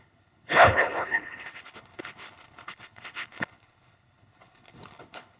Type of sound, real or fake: fake